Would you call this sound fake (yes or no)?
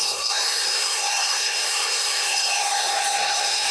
yes